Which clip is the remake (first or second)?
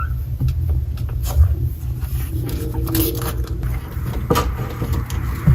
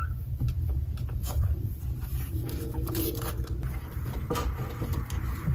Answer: second